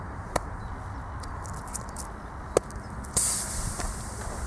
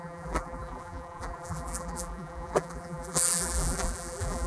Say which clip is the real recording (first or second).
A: first